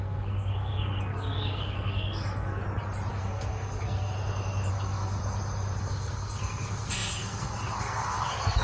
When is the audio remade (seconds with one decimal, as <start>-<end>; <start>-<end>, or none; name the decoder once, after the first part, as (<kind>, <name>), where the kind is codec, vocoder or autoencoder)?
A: 0.0-2.6 (codec, SNAC); 3.1-4.1; 4.7-5.2; 5.8-8.6